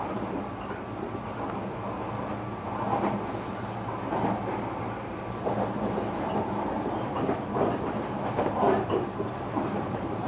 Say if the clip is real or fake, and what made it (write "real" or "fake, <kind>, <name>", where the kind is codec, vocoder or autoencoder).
real